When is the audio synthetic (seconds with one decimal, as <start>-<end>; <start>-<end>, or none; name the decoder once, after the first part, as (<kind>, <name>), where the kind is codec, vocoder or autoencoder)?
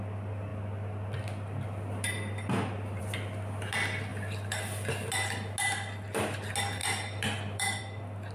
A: 4.1-4.9 (vocoder, BigVGAN v2); 6.8-7.8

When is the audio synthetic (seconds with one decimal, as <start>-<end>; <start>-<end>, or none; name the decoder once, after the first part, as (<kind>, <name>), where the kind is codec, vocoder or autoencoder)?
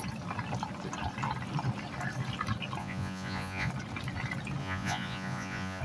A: 2.8-3.7 (vocoder, Vocos); 4.6-5.8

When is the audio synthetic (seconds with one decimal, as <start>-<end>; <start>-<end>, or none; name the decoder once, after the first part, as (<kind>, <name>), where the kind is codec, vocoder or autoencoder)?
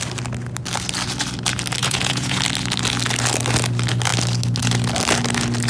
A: 1.8-2.4 (vocoder, Vocos)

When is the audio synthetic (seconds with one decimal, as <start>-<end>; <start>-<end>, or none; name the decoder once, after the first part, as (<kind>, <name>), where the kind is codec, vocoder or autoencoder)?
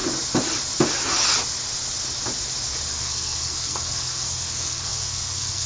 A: 2.9-5.7 (codec, SNAC)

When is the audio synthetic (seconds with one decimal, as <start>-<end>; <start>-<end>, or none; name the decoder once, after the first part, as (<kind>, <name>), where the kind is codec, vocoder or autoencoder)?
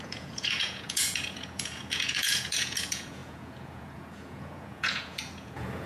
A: 0.0-5.9 (vocoder, Vocos)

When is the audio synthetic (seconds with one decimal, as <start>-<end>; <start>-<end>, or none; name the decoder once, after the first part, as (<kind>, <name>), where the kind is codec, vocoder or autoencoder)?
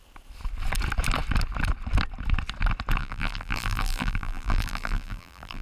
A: 3.0-5.6 (vocoder, BigVGAN v2)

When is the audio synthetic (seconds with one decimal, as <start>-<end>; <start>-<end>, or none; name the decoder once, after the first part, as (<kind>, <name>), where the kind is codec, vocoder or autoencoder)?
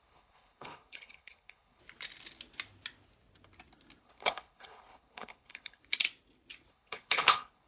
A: 0.0-1.8 (codec, HILCodec); 4.0-5.8; 6.7-7.7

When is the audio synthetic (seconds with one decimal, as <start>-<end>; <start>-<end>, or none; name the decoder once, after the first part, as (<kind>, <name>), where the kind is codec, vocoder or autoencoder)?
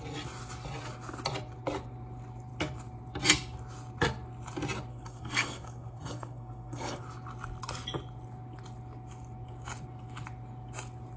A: 4.9-7.0 (codec, SNAC)